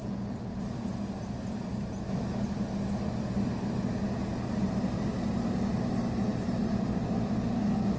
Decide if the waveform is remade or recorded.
recorded